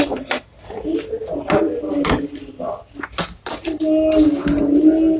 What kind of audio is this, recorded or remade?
recorded